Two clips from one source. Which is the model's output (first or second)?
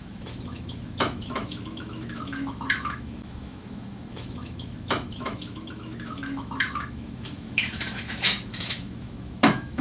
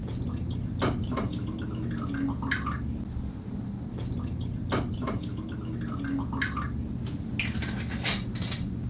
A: first